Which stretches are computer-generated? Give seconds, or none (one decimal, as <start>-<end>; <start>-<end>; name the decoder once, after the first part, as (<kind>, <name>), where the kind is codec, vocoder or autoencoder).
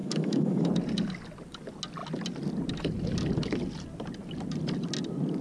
0.0-0.7 (autoencoder, DAC-VAE)